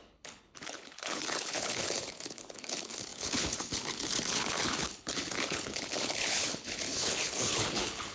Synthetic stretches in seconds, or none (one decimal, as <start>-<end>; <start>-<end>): 0.0-8.1